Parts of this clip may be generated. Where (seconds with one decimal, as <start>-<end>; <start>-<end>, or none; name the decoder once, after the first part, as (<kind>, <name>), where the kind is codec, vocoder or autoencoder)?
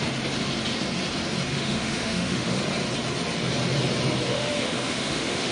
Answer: 1.5-2.6 (autoencoder, DAC-VAE); 4.3-5.5